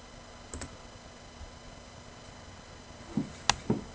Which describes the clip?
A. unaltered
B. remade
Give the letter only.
A